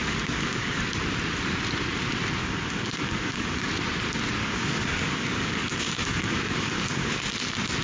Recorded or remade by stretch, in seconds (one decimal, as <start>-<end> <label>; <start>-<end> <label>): 0.0-0.8 remade; 0.8-2.4 recorded; 2.4-3.7 remade; 3.7-4.4 recorded; 4.4-7.2 remade; 7.2-7.8 recorded